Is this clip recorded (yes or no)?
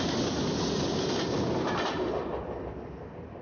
yes